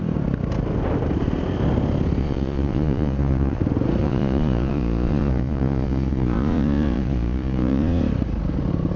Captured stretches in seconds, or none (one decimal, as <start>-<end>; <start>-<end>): 0.0-2.2; 3.6-4.0; 8.0-9.0